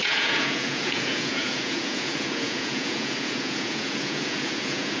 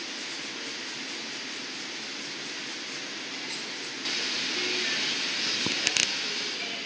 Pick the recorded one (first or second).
second